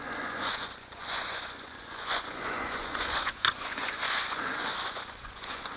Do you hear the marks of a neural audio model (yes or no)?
yes